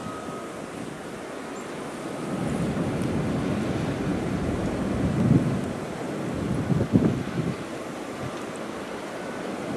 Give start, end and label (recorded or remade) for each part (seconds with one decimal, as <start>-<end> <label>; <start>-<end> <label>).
0.0-9.8 recorded